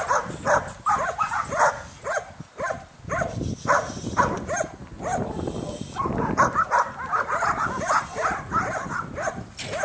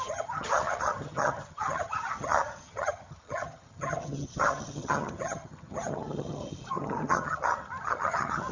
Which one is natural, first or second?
first